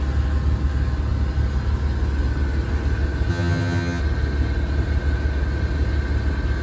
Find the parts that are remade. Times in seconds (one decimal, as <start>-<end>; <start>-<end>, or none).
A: 3.3-4.0